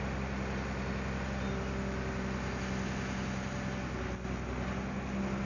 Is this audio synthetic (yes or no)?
no